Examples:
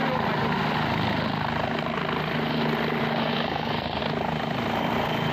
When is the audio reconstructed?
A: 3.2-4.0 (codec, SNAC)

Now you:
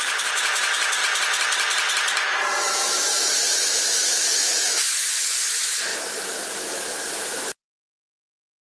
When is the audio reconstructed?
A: 0.0-1.0 (autoencoder, DAC-VAE); 2.6-8.6

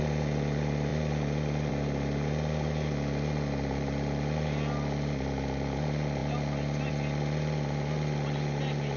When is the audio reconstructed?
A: none

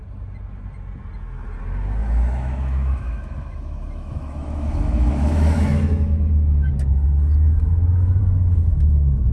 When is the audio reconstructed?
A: 2.0-6.7 (autoencoder, DAC-VAE); 7.6-8.2